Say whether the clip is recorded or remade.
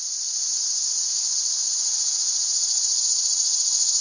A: recorded